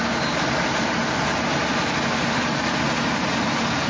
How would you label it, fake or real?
real